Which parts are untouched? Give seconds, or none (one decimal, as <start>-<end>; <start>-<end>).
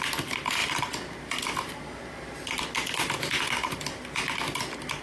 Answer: 0.0-5.0